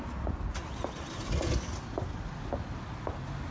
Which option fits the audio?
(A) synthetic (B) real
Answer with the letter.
B